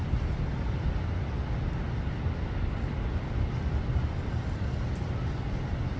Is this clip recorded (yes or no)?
yes